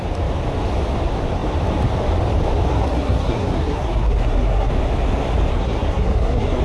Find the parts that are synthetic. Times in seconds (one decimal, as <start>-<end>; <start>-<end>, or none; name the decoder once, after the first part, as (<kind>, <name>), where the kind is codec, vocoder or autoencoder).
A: 2.7-4.7 (codec, SNAC); 5.5-6.6